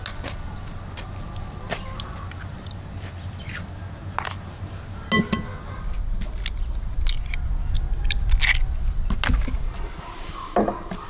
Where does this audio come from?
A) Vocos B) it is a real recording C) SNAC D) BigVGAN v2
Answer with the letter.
B